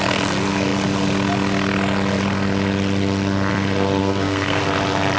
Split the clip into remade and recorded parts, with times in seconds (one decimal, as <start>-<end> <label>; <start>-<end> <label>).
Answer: 0.0-4.0 recorded; 4.0-4.6 remade; 4.6-5.2 recorded